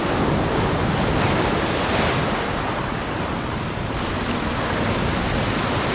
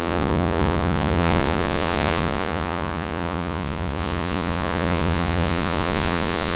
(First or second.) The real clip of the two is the first